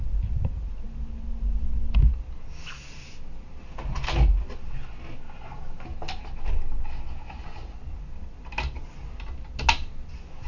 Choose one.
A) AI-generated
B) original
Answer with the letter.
B